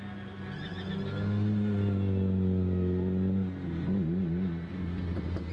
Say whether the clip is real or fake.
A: real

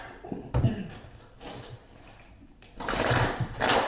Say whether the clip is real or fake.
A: real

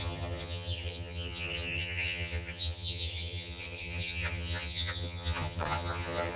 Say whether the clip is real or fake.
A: fake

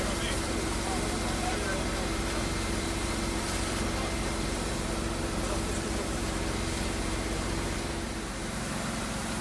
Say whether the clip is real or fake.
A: fake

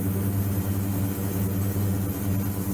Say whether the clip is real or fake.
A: real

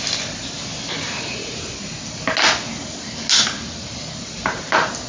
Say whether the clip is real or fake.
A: real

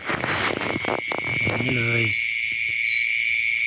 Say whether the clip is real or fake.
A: real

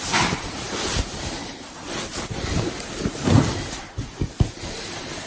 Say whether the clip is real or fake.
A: fake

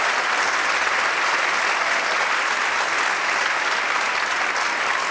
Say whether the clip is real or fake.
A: real